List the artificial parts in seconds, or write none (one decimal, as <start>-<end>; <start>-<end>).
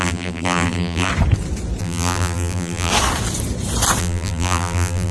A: 0.0-1.1; 1.8-2.9; 4.0-5.1